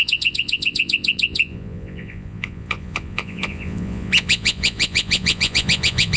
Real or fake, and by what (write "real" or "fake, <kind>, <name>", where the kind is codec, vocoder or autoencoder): fake, vocoder, Vocos